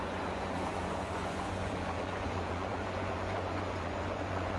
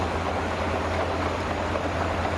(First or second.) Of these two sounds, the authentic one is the second